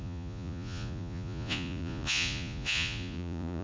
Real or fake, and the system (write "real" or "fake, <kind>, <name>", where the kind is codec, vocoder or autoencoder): fake, vocoder, Vocos